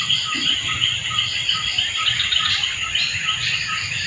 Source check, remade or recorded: remade